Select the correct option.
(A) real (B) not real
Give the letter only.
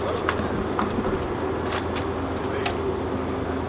A